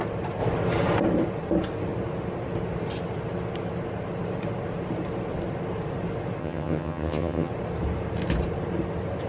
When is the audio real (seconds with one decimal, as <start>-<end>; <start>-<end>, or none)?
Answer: 0.0-6.4; 7.5-9.3